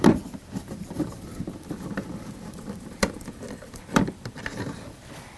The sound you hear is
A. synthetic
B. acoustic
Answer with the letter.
A